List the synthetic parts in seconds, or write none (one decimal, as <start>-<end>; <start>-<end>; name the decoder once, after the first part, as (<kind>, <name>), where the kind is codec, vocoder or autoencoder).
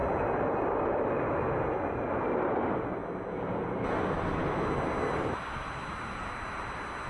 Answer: none